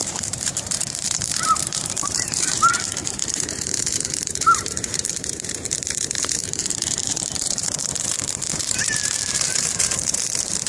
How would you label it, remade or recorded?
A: remade